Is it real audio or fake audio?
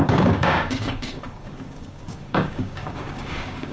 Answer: fake